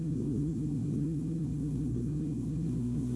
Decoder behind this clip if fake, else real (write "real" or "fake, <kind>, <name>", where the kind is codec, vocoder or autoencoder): fake, codec, SNAC